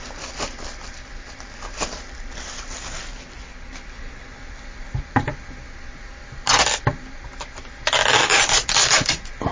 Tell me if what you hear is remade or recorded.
remade